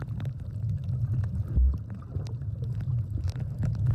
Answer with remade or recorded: recorded